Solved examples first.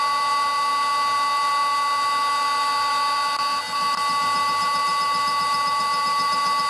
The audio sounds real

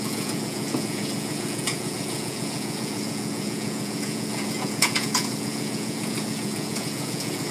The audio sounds fake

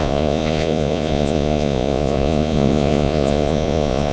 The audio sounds fake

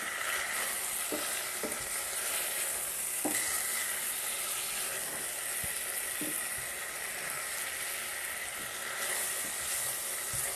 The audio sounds real